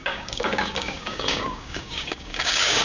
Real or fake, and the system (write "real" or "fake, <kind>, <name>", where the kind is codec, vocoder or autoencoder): fake, codec, DAC